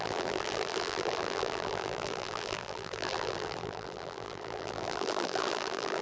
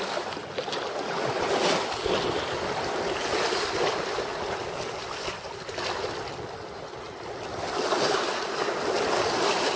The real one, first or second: second